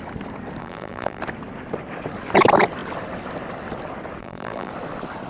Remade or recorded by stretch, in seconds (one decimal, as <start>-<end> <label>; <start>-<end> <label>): 0.0-0.6 recorded; 0.6-1.2 remade; 1.2-4.2 recorded; 4.2-4.7 remade; 4.7-5.3 recorded